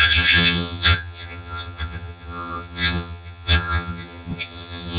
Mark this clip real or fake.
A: fake